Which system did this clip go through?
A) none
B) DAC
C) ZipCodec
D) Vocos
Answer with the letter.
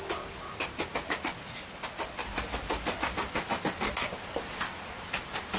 A